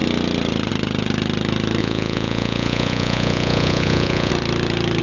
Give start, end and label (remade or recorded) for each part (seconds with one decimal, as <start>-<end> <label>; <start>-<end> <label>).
0.0-1.8 recorded; 1.8-4.3 remade; 4.3-5.0 recorded